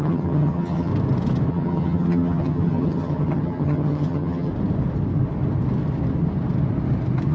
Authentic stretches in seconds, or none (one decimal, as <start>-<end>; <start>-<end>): 0.9-1.5; 4.5-7.3